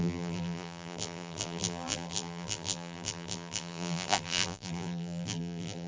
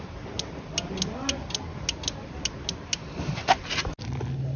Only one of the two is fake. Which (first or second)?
first